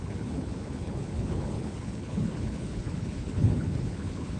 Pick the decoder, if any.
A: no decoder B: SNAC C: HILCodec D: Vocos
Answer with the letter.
C